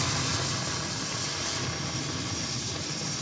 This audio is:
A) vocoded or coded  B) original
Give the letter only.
B